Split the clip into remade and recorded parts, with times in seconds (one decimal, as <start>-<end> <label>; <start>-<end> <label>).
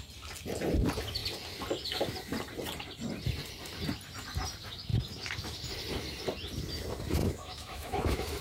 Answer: 0.0-7.2 recorded; 7.2-8.4 remade